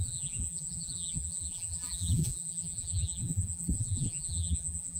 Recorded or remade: remade